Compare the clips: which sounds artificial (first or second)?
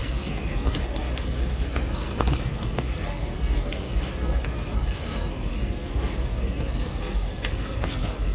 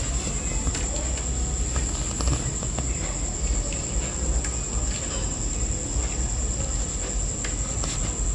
first